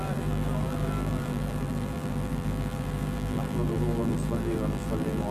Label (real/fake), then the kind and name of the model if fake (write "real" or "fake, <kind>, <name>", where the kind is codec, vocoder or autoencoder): fake, vocoder, BigVGAN v2